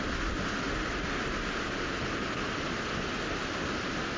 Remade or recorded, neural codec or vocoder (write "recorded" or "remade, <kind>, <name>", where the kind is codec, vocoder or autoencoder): recorded